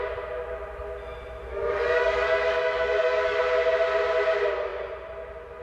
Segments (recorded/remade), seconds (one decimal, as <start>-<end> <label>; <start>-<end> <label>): 0.0-1.5 recorded; 1.5-3.4 remade; 3.4-5.6 recorded